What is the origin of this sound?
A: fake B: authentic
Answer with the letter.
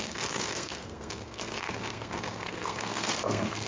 A